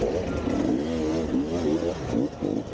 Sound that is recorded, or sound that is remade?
recorded